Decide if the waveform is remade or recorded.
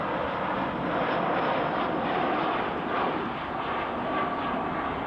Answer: recorded